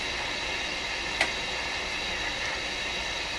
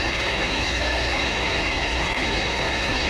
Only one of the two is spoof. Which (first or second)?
second